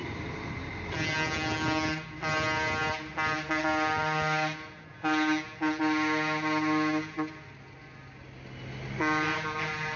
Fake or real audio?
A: real